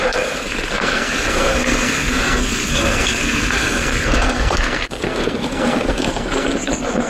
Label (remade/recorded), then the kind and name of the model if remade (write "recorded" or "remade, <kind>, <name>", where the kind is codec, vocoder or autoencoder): remade, codec, SNAC